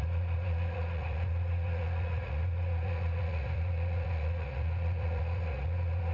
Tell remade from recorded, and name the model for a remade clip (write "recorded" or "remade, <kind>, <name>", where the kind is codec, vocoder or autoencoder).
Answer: remade, vocoder, Vocos